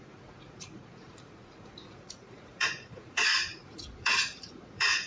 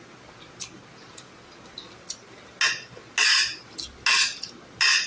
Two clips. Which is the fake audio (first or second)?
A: first